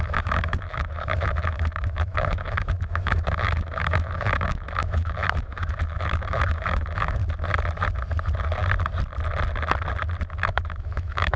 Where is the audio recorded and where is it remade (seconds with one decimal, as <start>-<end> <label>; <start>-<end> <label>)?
0.0-7.2 remade; 7.2-10.3 recorded; 10.3-11.4 remade

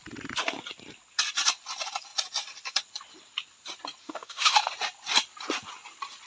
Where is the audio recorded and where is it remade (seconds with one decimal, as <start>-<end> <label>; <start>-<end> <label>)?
0.0-4.0 recorded; 4.0-4.7 remade; 4.7-6.3 recorded